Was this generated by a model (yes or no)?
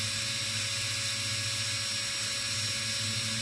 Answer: no